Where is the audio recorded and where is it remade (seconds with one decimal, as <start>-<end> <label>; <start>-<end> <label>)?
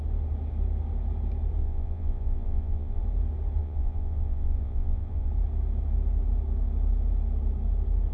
0.0-1.6 recorded; 1.6-3.0 remade; 3.0-3.6 recorded; 3.6-5.3 remade; 5.3-8.1 recorded